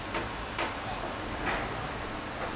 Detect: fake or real real